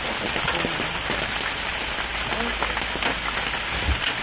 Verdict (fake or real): real